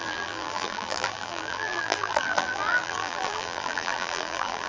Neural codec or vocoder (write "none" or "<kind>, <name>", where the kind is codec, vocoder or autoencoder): vocoder, BigVGAN v2